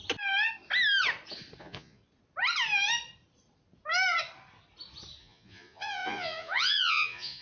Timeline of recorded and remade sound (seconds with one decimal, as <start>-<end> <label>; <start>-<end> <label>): 0.0-1.6 recorded; 1.6-2.0 remade; 2.0-5.2 recorded; 5.2-7.4 remade